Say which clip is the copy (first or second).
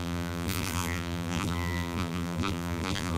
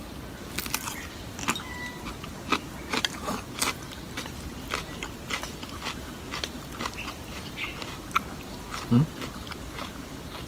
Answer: first